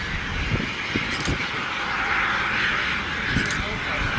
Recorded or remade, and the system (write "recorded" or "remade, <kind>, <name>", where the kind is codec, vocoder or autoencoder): recorded